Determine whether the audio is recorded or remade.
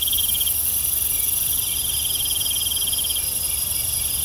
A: recorded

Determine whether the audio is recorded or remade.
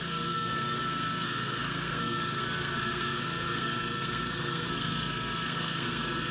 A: remade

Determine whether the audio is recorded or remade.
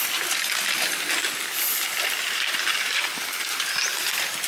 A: recorded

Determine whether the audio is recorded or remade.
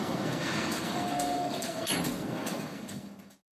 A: remade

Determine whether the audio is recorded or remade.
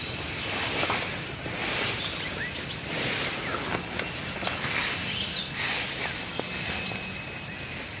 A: recorded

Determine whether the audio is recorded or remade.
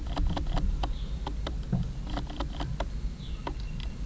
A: recorded